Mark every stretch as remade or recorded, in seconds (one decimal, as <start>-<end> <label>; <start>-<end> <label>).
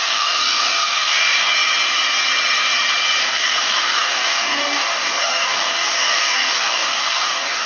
0.0-1.5 remade; 1.5-3.2 recorded; 3.2-7.7 remade